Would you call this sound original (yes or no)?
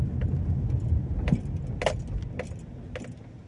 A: yes